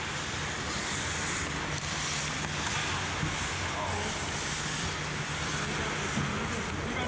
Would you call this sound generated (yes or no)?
no